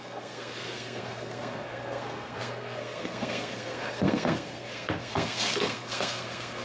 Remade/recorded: remade